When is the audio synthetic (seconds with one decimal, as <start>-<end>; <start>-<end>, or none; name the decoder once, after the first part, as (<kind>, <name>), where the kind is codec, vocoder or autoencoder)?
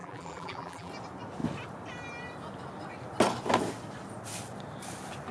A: 0.0-0.9 (vocoder, BigVGAN v2)